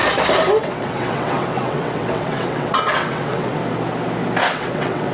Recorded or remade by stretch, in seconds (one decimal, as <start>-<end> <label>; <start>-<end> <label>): 0.0-0.6 recorded; 0.6-3.6 remade; 3.6-4.5 recorded; 4.5-5.1 remade

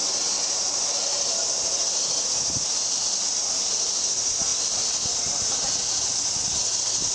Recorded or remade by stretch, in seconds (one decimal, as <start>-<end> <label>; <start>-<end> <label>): 0.0-7.1 recorded

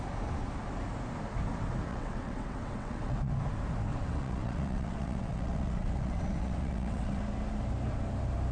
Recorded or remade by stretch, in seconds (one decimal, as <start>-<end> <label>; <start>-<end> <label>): 0.0-1.9 recorded; 1.9-3.3 remade; 3.3-3.9 recorded; 3.9-7.2 remade; 7.2-8.5 recorded

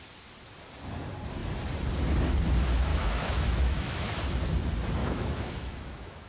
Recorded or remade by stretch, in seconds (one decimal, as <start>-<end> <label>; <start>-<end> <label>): 0.0-2.9 recorded; 2.9-4.2 remade; 4.2-5.0 recorded; 5.0-6.3 remade

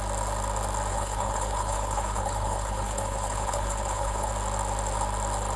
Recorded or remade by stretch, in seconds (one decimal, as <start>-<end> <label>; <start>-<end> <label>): 0.0-0.9 recorded; 0.9-4.3 remade; 4.3-5.6 recorded

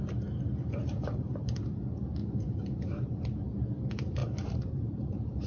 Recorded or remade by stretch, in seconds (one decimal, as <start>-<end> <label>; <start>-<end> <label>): 0.0-0.8 recorded; 0.8-1.7 remade; 1.7-2.2 recorded; 2.2-3.2 remade; 3.2-4.2 recorded; 4.2-5.5 remade

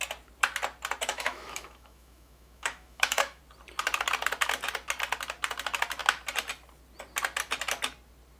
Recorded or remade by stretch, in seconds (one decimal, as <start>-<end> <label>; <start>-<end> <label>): 0.0-1.1 recorded; 1.1-3.4 remade; 3.4-8.4 recorded